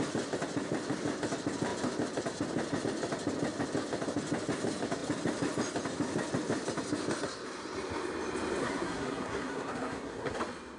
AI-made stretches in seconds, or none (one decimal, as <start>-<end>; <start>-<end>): 8.6-10.4